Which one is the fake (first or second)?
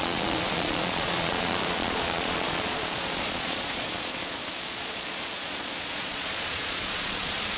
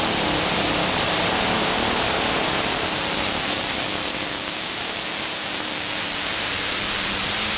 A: first